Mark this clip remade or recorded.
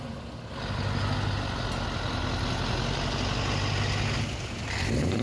recorded